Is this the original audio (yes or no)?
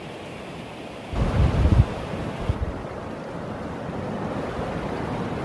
no